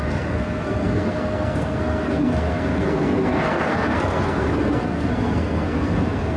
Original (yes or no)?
no